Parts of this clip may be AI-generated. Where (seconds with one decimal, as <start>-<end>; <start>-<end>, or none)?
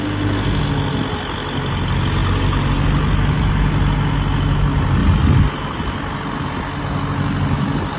none